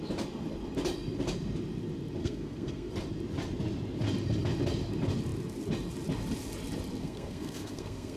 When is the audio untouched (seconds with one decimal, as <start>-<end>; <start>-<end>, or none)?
0.0-2.2; 2.9-7.0